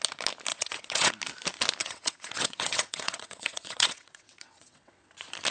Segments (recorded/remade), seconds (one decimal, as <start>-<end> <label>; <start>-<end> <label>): 0.0-0.5 recorded; 0.5-1.1 remade; 1.1-1.8 recorded; 1.8-5.1 remade; 5.1-5.5 recorded